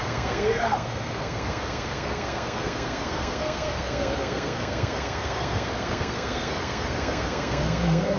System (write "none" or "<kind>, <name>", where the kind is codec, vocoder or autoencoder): codec, SNAC